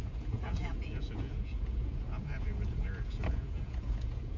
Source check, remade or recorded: remade